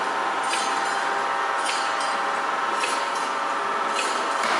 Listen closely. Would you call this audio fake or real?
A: real